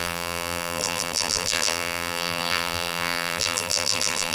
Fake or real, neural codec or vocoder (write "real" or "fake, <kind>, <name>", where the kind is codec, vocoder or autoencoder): fake, vocoder, BigVGAN v2